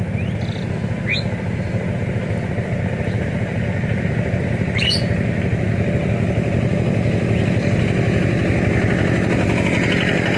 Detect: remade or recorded recorded